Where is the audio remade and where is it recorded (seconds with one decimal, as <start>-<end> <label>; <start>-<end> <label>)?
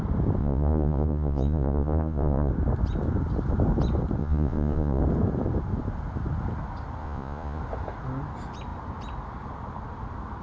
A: 0.0-0.4 recorded; 0.4-2.5 remade; 2.5-4.2 recorded; 4.2-5.0 remade; 5.0-7.0 recorded; 7.0-7.6 remade; 7.6-10.4 recorded